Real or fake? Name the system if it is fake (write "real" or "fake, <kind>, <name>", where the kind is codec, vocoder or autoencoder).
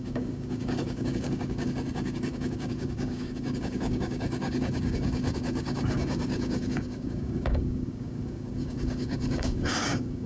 fake, codec, DAC